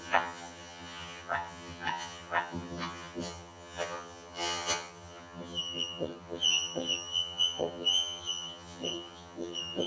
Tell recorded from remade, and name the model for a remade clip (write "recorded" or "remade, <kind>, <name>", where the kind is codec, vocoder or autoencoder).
remade, vocoder, HiFi-GAN